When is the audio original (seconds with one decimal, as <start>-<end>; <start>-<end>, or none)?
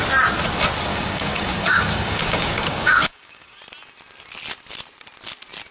0.0-0.9; 3.6-5.7